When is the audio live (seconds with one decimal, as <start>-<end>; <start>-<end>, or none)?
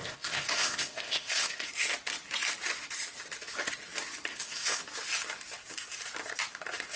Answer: 1.7-4.3; 4.8-7.0